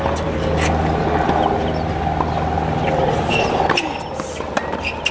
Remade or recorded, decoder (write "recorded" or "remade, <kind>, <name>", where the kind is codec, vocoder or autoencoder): recorded